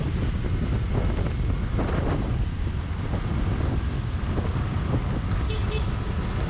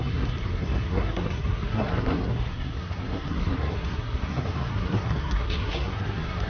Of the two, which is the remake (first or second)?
second